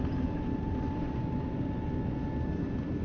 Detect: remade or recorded recorded